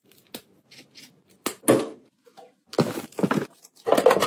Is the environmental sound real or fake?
real